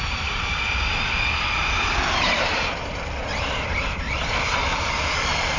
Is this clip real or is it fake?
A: fake